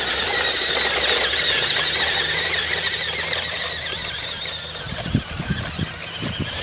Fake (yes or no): yes